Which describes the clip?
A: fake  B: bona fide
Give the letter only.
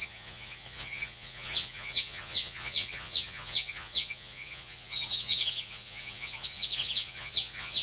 A